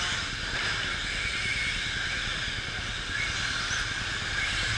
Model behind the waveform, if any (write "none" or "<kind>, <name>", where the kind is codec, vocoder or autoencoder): none